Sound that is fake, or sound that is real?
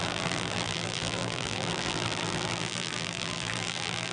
fake